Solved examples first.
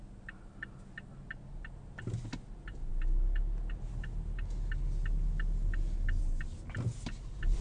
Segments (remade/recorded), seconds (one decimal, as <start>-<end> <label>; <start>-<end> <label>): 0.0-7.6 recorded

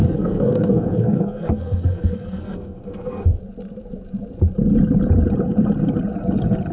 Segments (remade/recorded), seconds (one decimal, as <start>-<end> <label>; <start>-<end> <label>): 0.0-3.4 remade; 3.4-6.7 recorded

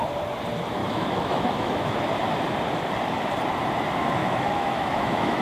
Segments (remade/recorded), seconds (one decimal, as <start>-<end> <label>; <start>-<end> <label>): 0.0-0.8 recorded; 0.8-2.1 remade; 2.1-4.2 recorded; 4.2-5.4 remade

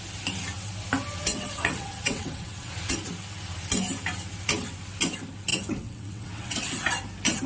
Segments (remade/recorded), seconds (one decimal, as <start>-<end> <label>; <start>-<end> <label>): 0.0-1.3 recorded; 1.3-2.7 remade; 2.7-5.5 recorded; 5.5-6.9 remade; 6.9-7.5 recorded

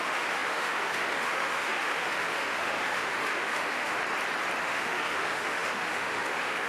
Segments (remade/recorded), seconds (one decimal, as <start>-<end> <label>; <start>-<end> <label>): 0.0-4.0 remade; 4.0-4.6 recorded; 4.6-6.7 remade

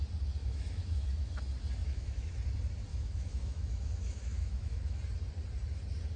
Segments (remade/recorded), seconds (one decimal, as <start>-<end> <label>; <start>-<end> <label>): 0.0-0.4 recorded; 0.4-1.4 remade; 1.4-1.8 recorded; 1.8-2.3 remade; 2.3-2.9 recorded; 2.9-5.0 remade; 5.0-6.2 recorded

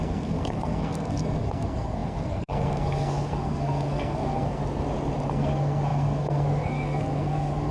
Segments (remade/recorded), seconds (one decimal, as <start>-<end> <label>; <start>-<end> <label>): 0.0-4.6 remade; 4.6-5.3 recorded; 5.3-7.7 remade